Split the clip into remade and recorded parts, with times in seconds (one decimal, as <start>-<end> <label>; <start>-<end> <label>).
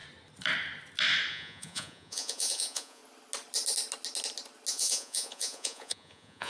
0.0-1.3 recorded; 1.3-3.0 remade; 3.0-4.7 recorded; 4.7-6.5 remade